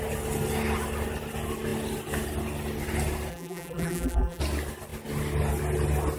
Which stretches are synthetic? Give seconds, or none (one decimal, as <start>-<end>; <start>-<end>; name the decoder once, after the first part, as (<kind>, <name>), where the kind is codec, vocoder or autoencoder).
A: 3.3-4.4 (vocoder, BigVGAN v2)